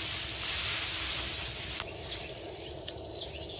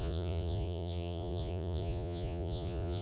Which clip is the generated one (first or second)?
second